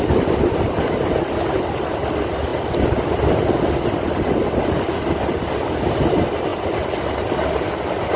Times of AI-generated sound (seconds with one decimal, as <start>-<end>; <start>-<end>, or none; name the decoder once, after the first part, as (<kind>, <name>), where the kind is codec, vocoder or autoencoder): none